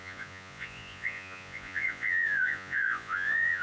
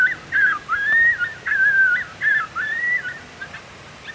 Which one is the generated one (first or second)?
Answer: first